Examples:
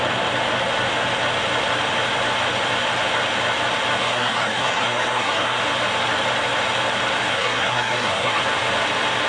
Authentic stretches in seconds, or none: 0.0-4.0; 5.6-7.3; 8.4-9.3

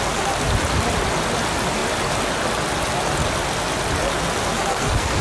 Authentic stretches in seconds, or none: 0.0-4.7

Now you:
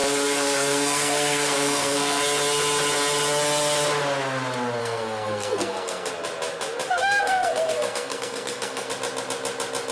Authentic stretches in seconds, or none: 2.2-4.8; 6.1-6.9; 8.9-9.9